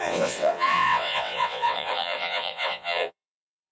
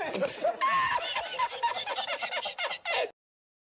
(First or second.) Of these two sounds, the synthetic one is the first